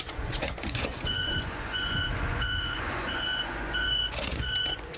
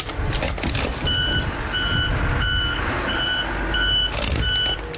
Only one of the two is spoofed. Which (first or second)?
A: first